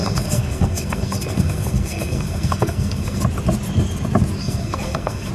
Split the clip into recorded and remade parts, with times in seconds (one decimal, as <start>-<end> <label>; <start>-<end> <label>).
0.0-3.2 remade; 3.2-4.4 recorded; 4.4-5.3 remade